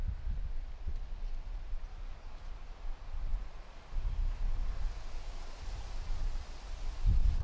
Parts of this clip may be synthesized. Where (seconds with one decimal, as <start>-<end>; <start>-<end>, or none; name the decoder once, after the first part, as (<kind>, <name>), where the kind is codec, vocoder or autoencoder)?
1.9-2.5 (codec, DAC)